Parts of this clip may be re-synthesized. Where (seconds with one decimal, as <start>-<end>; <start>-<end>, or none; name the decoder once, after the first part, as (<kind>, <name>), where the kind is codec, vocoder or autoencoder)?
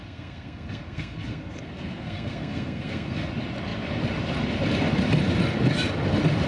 0.0-3.3 (codec, SNAC)